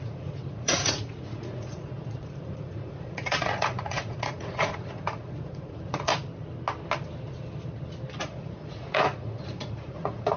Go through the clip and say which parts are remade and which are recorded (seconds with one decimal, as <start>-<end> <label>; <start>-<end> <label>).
0.0-6.1 remade; 6.1-8.2 recorded; 8.2-10.4 remade